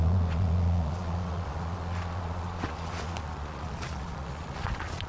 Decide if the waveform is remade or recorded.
remade